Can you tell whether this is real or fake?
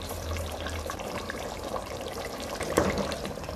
fake